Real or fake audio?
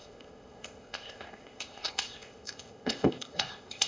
fake